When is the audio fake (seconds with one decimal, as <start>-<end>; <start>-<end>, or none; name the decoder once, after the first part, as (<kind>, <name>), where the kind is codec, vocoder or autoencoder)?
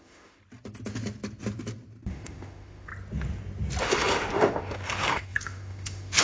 0.0-0.4 (autoencoder, DAC-VAE); 2.1-2.9; 3.8-6.2